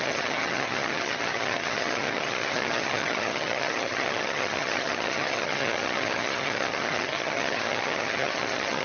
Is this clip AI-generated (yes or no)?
yes